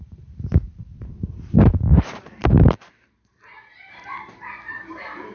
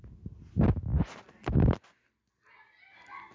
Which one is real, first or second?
second